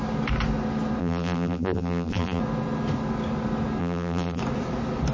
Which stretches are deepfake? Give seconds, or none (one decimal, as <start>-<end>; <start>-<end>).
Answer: 1.0-2.4; 3.8-4.4